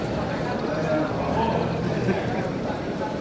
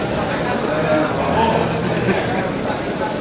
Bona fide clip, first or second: second